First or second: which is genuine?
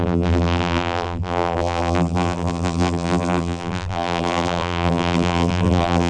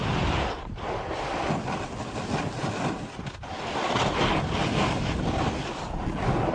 second